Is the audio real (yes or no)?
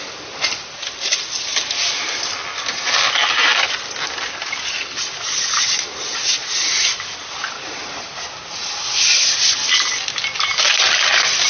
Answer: yes